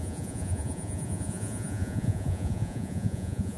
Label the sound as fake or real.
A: fake